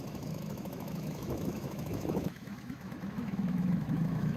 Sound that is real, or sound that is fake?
fake